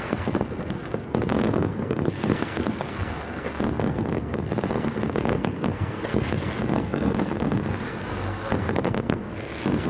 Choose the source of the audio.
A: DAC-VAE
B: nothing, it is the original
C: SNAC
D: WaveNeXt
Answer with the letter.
C